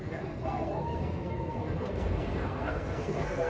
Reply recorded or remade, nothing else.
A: remade